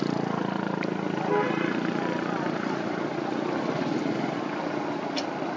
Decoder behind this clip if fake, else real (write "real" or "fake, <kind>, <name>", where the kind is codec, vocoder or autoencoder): real